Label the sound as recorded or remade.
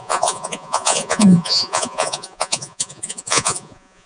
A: remade